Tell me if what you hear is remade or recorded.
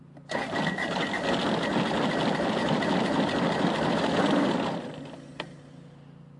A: recorded